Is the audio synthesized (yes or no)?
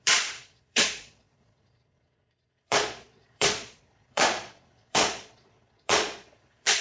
yes